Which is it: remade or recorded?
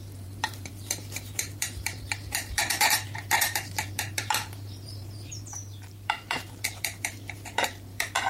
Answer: remade